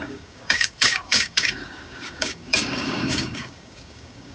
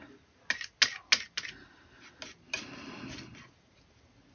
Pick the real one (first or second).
second